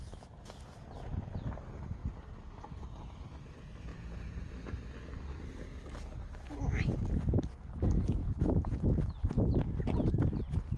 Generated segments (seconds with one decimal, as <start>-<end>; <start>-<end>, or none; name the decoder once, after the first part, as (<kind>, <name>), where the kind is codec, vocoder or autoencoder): 3.9-4.5 (vocoder, Vocos); 8.2-8.9